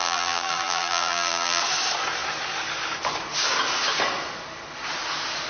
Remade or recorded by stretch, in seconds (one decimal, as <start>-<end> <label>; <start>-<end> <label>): 0.0-1.6 remade; 1.6-5.5 recorded